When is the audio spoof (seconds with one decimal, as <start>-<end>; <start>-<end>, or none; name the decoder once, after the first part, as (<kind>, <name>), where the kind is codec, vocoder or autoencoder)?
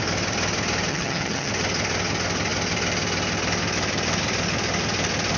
0.9-1.5 (vocoder, HiFi-GAN)